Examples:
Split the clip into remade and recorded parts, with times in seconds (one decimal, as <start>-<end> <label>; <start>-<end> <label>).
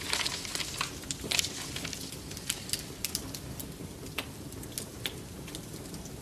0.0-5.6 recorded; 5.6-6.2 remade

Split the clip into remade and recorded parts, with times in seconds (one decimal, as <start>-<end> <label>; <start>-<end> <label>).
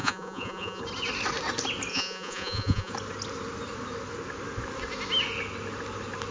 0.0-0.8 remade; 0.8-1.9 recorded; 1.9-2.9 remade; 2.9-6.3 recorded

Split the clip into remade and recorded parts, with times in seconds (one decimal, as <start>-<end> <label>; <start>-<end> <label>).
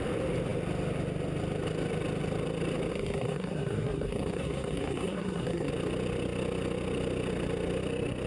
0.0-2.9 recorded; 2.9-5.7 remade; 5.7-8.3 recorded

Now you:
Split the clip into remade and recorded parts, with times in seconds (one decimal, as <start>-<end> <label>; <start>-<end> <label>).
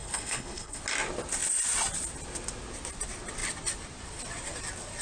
0.0-0.8 remade; 0.8-5.0 recorded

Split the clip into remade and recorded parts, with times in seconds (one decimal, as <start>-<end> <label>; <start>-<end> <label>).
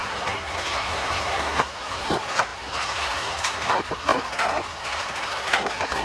0.0-6.0 remade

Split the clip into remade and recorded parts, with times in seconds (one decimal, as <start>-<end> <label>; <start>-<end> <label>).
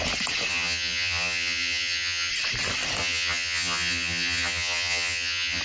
0.0-0.5 recorded; 0.5-2.3 remade; 2.3-3.0 recorded; 3.0-5.6 remade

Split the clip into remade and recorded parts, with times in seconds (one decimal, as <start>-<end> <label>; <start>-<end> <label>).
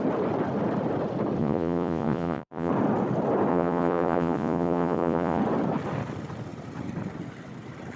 0.0-1.4 recorded; 1.4-2.7 remade; 2.7-3.5 recorded; 3.5-5.4 remade; 5.4-8.0 recorded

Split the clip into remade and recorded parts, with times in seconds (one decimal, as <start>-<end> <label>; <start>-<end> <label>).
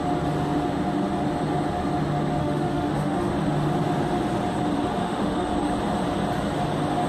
0.0-2.4 recorded; 2.4-3.3 remade; 3.3-5.0 recorded; 5.0-5.5 remade; 5.5-7.1 recorded